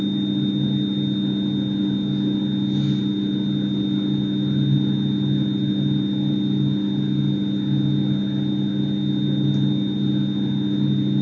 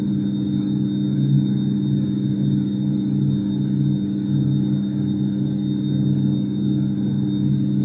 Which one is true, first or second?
first